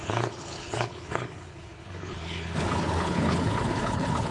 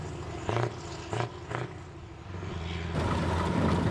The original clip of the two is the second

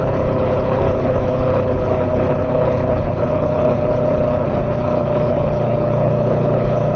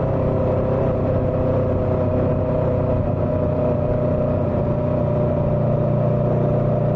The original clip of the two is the second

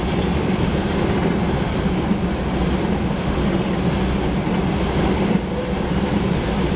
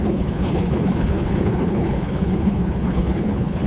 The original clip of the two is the first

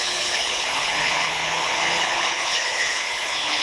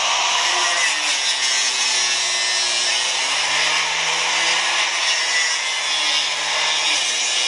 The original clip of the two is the second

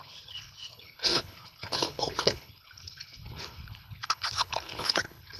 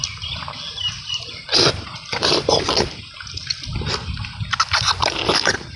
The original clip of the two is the second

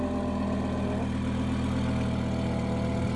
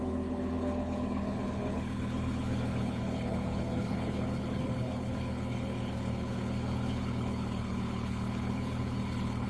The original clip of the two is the first